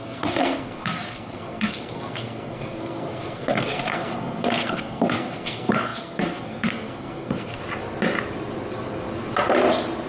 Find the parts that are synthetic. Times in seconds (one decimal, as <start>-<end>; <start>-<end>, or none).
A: 0.0-7.6